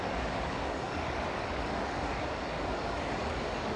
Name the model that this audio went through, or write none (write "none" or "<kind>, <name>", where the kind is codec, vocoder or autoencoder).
codec, DAC